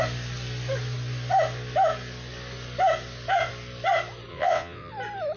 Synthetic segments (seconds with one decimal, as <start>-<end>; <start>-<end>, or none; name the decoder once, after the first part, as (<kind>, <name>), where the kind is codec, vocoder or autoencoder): 4.3-4.9 (vocoder, WaveNeXt)